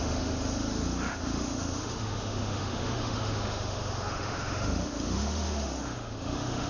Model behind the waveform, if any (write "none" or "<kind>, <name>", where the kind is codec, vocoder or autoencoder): autoencoder, DAC-VAE